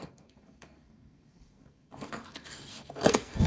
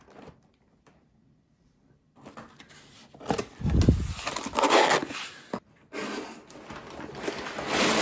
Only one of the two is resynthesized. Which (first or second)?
first